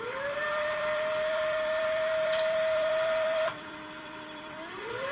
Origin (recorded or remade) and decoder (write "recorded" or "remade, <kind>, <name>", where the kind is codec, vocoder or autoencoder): remade, vocoder, BigVGAN v2